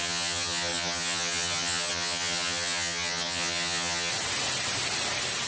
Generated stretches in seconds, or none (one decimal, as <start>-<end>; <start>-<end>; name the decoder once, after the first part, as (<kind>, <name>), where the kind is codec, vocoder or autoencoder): 0.0-4.1 (vocoder, HiFi-GAN)